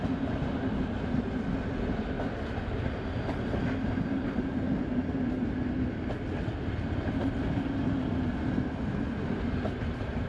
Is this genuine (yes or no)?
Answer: yes